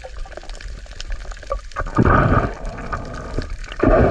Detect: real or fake real